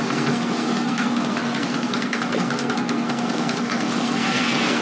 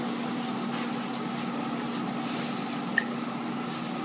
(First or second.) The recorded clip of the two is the second